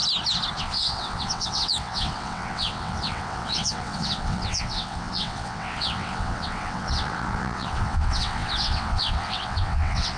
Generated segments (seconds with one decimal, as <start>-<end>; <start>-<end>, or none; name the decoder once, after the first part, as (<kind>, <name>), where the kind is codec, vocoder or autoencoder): 0.6-10.2 (vocoder, WaveNeXt)